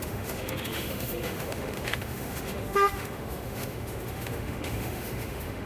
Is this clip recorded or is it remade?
remade